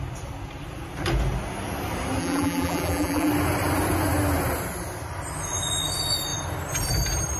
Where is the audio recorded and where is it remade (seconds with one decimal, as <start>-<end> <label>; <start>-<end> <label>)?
0.0-2.2 recorded; 2.2-3.3 remade; 3.3-7.4 recorded